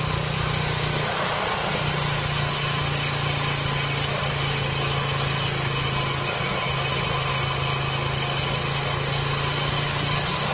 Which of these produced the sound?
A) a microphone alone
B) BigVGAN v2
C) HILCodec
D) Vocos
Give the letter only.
A